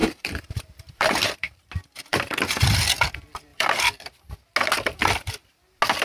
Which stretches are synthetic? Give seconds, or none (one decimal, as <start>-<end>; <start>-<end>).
0.0-1.6; 2.1-2.7; 3.5-4.1